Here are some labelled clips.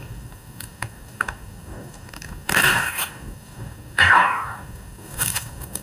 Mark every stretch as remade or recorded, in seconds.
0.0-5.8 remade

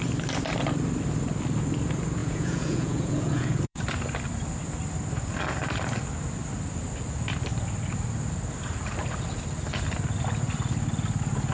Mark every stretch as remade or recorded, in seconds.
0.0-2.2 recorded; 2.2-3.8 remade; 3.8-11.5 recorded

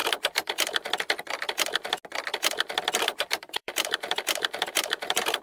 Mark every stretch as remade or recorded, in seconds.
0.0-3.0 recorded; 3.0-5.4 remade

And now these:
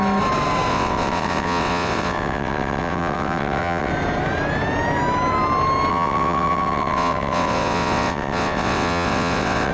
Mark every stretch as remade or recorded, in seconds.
0.0-0.7 recorded; 0.7-3.9 remade; 3.9-5.9 recorded; 5.9-9.7 remade

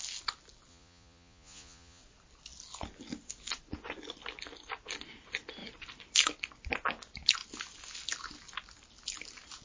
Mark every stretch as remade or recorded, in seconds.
0.0-0.7 recorded; 0.7-2.0 remade; 2.0-9.6 recorded

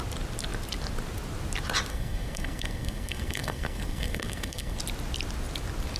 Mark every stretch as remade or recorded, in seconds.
0.0-1.9 recorded; 1.9-4.8 remade; 4.8-6.0 recorded

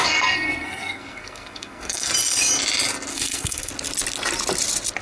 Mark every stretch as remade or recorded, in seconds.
0.0-2.1 remade; 2.1-3.1 recorded; 3.1-3.7 remade; 3.7-5.0 recorded

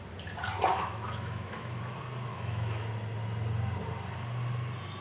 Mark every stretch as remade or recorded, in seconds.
0.0-0.7 recorded; 0.7-1.8 remade; 1.8-2.3 recorded; 2.3-2.9 remade; 2.9-5.0 recorded